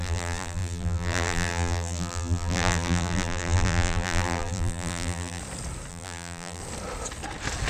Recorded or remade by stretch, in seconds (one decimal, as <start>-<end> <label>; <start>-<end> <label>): 0.0-5.4 remade; 5.4-5.9 recorded; 5.9-6.6 remade; 6.6-7.7 recorded